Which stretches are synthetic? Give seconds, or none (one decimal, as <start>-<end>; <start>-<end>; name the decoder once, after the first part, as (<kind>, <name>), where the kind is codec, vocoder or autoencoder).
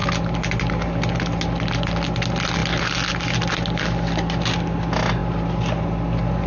none